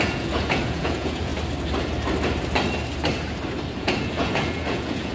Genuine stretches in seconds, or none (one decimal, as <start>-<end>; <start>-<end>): 1.3-3.8